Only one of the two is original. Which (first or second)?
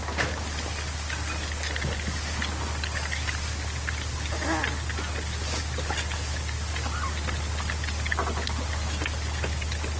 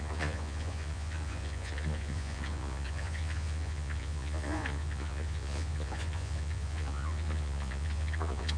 first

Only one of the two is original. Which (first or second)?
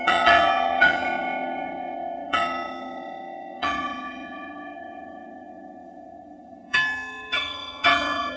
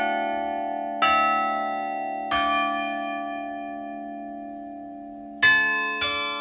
second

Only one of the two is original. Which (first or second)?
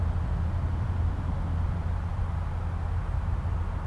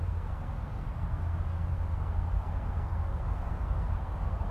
first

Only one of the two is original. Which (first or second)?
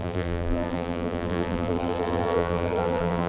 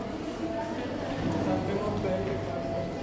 second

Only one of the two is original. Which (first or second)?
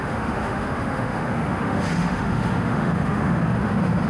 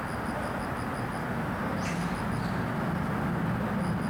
second